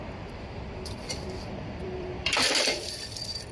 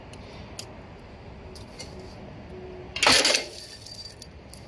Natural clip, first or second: second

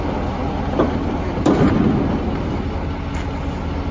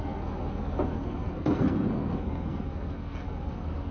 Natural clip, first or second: first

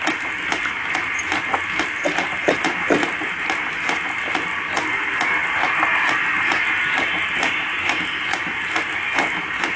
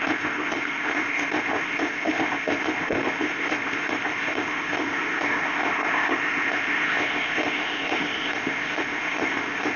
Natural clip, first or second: first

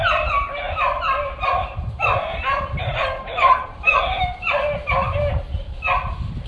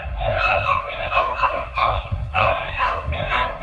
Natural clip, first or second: first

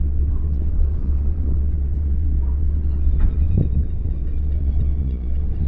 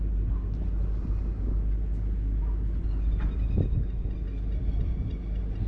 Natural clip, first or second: second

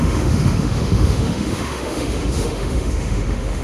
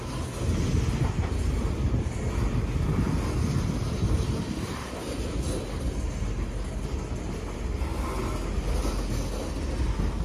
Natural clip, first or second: second